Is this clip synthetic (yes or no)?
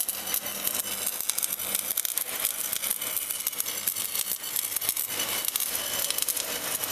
no